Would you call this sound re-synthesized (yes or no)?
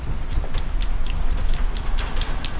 no